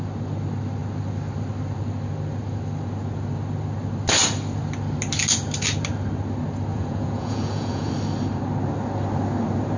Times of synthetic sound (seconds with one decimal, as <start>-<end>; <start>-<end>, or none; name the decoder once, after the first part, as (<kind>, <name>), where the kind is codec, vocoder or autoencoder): 6.7-7.9 (vocoder, Vocos)